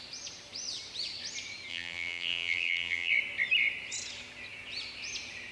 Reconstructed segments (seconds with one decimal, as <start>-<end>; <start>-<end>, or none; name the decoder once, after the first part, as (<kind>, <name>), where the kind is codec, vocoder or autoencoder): 1.7-3.1 (vocoder, BigVGAN v2)

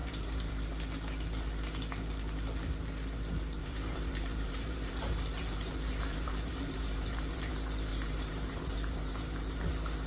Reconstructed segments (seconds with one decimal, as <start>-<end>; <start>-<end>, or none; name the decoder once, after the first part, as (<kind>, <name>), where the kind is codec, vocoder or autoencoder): 0.0-0.5 (vocoder, BigVGAN v2); 3.6-7.5; 7.9-9.7

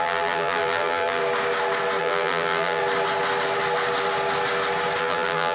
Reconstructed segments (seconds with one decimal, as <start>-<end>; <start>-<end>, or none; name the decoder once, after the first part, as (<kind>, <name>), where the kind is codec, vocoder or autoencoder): 0.0-1.2 (vocoder, BigVGAN v2); 2.0-2.8; 5.0-5.5

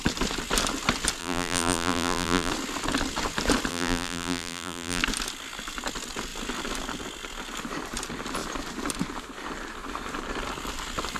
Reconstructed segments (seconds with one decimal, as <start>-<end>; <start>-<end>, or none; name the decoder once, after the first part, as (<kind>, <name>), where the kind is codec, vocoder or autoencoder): 1.2-2.5 (vocoder, BigVGAN v2); 3.7-5.0